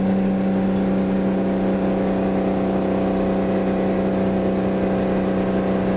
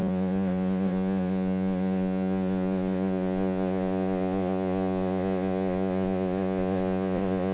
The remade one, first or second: second